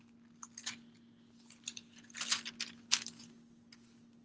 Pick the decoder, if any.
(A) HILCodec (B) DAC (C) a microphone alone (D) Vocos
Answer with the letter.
C